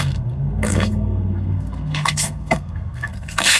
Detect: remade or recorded remade